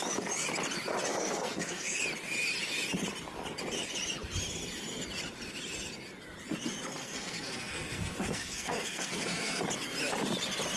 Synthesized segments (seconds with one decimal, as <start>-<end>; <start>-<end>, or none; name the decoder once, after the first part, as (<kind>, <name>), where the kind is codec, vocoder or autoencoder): 1.1-2.0 (codec, SNAC); 7.0-9.6